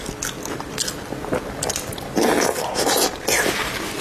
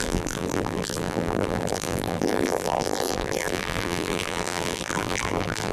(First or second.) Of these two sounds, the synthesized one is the second